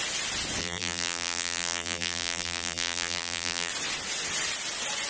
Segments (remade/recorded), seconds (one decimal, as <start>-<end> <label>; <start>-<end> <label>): 0.0-0.6 recorded; 0.6-3.7 remade; 3.7-5.1 recorded